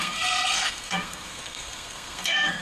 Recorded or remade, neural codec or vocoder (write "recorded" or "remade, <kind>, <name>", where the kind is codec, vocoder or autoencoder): remade, codec, SNAC